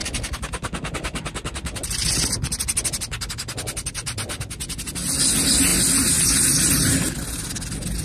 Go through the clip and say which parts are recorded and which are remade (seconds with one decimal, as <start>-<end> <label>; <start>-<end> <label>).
0.0-8.0 recorded